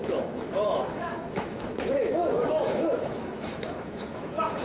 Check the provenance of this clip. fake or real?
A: fake